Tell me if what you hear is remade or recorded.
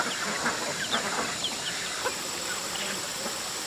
remade